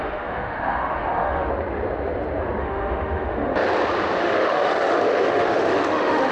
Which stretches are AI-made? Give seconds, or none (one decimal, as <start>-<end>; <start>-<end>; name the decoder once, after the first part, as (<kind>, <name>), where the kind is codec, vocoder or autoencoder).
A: 0.0-1.5 (autoencoder, DAC-VAE); 2.6-3.6; 4.2-6.3